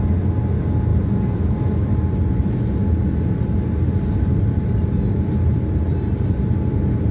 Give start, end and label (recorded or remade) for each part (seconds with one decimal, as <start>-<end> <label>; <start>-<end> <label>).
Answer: 0.0-7.1 recorded